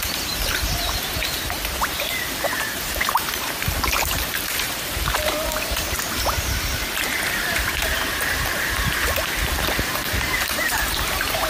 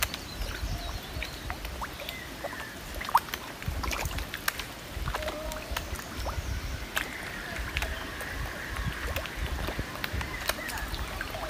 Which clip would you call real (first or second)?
second